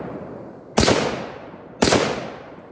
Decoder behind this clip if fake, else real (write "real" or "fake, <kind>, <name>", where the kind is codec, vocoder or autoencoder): real